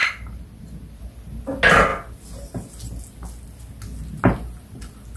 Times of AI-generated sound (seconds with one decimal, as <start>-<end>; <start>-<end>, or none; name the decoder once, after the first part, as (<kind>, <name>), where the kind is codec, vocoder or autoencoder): none